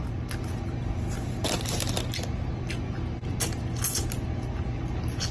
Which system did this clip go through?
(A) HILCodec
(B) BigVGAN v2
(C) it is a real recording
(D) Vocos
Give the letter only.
C